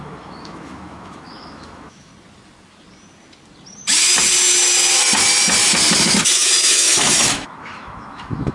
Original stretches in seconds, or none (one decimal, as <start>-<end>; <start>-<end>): 2.1-6.0